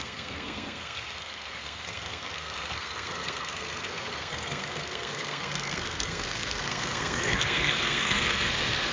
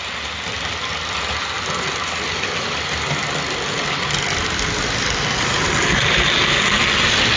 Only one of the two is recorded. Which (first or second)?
second